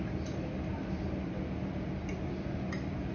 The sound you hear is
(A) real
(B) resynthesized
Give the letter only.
A